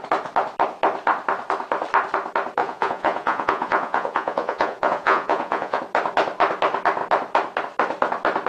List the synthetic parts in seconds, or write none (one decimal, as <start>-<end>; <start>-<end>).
2.6-5.8